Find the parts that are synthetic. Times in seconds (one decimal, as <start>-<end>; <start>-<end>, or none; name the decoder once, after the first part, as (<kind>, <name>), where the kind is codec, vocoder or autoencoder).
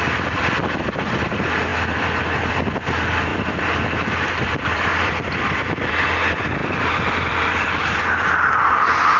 3.3-5.9 (vocoder, BigVGAN v2); 6.6-7.1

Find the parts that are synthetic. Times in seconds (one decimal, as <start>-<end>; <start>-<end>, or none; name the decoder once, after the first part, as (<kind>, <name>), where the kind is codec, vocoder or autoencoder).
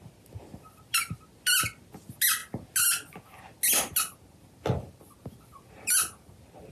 none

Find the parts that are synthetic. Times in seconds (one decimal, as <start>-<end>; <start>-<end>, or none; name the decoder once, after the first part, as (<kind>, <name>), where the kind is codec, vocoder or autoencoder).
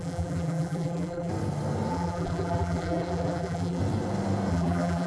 0.0-1.3 (vocoder, BigVGAN v2); 1.9-3.8; 4.5-5.1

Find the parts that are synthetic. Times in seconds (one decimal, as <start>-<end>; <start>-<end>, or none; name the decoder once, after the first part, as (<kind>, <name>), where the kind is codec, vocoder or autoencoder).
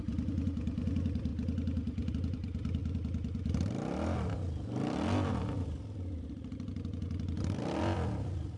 0.0-1.3 (vocoder, BigVGAN v2); 2.1-2.8; 5.3-8.6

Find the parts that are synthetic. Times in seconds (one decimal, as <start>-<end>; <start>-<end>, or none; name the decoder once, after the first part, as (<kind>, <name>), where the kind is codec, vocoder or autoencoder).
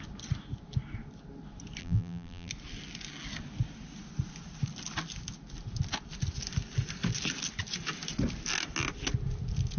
1.8-2.5 (vocoder, BigVGAN v2)